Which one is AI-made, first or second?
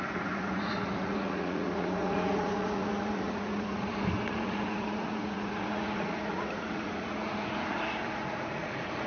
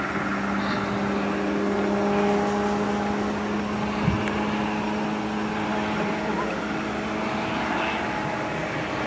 first